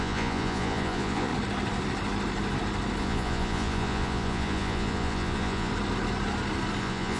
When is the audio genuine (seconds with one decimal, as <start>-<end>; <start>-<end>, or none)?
1.3-3.0; 5.7-6.8